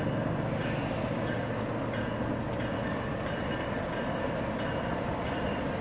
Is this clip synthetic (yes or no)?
no